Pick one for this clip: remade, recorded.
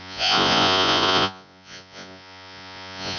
remade